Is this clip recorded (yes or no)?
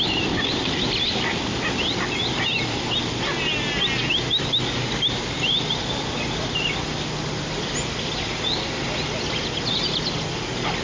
yes